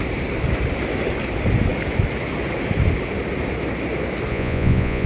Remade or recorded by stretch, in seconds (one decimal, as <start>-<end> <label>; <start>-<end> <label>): 0.0-4.3 recorded; 4.3-5.1 remade